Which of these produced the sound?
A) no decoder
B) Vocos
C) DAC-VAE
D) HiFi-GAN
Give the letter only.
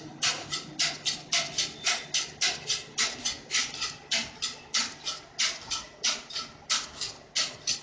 A